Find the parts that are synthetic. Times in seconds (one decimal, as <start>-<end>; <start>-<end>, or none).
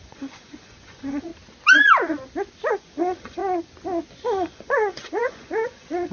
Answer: 0.0-1.3; 2.7-3.4; 4.1-6.1